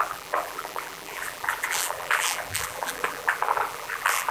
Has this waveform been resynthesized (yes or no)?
yes